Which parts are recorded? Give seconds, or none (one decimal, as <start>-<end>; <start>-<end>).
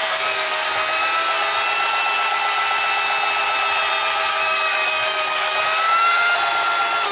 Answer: 0.7-4.3; 5.6-7.1